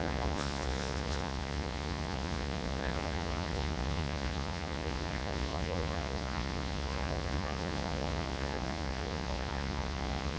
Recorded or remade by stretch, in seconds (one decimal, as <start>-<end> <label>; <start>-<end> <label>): 0.0-10.4 remade